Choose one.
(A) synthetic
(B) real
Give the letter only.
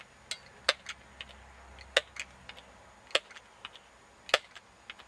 B